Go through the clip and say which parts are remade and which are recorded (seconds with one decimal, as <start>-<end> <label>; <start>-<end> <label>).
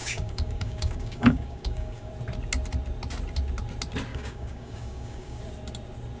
0.0-2.1 remade; 2.1-4.1 recorded; 4.1-5.4 remade; 5.4-6.2 recorded